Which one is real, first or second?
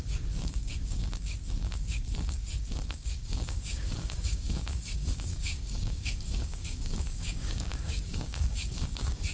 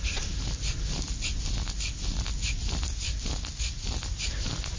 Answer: second